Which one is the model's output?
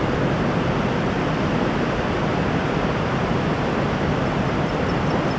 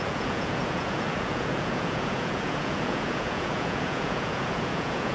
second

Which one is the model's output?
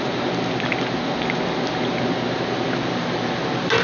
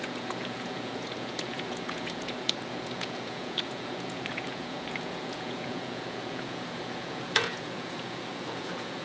second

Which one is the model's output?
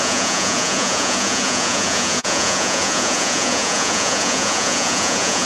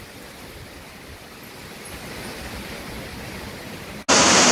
first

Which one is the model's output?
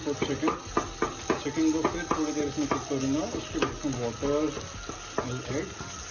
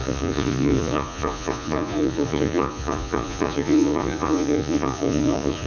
second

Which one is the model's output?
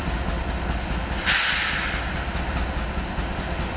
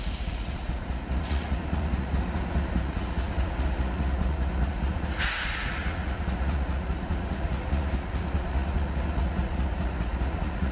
second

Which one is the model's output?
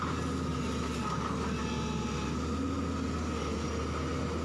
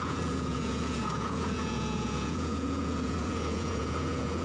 second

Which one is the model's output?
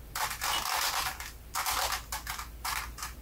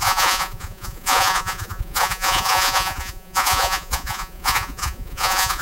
second